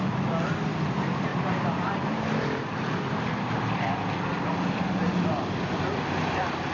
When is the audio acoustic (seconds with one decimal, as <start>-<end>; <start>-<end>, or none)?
0.0-1.3; 3.0-6.7